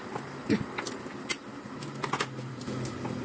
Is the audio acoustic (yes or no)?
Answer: yes